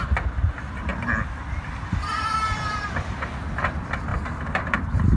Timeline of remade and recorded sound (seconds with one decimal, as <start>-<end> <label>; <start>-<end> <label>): 0.0-0.9 remade; 0.9-3.3 recorded; 3.3-5.2 remade